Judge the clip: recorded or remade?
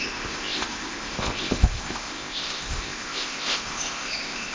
remade